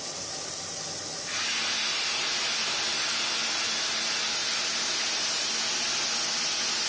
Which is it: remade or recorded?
recorded